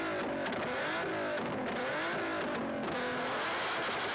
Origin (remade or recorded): recorded